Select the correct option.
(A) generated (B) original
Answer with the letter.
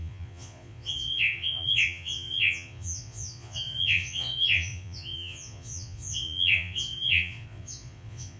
A